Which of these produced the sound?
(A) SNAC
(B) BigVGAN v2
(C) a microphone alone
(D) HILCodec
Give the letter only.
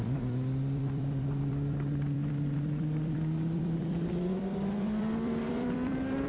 B